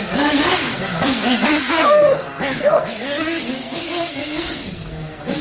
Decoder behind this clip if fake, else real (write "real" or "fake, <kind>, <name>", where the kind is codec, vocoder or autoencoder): fake, codec, SNAC